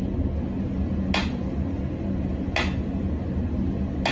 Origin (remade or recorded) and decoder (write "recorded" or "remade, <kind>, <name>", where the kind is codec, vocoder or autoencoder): recorded